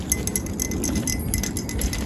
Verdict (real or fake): real